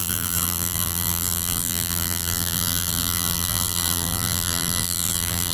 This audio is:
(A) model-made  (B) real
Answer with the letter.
A